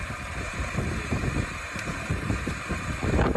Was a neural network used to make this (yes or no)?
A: yes